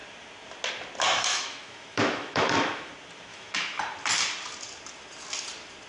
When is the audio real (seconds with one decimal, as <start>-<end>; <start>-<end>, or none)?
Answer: 0.0-1.3; 2.9-3.3; 3.8-5.9